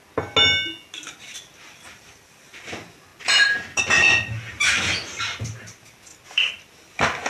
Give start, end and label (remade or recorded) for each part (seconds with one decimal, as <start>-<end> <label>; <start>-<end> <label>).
0.0-3.1 recorded; 3.1-3.8 remade; 3.8-6.1 recorded; 6.1-7.3 remade